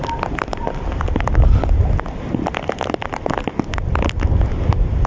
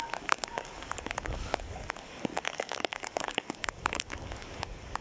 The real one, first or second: first